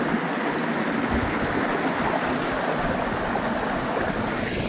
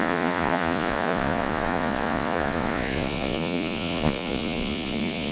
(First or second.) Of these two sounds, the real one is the first